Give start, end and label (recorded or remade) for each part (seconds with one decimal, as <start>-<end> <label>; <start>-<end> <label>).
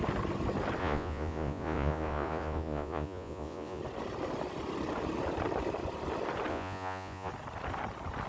0.0-0.8 recorded; 0.8-3.8 remade; 3.8-6.5 recorded; 6.5-7.3 remade; 7.3-8.3 recorded